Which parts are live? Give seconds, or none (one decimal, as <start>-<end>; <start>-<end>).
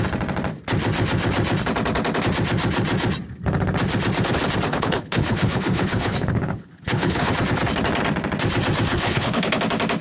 0.0-4.7; 7.3-8.9; 9.6-10.0